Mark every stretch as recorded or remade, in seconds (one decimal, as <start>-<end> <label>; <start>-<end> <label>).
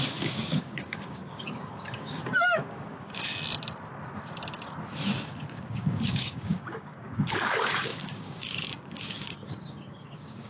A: 0.0-3.2 remade; 3.2-5.6 recorded; 5.6-10.5 remade